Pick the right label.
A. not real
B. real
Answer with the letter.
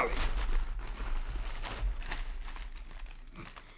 B